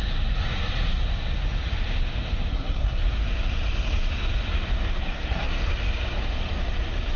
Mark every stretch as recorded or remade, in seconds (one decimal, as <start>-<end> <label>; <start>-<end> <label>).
0.0-2.5 recorded; 2.5-3.0 remade; 3.0-5.0 recorded; 5.0-5.7 remade; 5.7-7.2 recorded